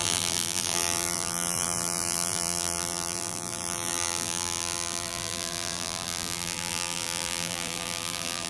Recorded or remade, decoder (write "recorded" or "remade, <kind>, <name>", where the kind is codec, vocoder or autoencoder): remade, vocoder, BigVGAN v2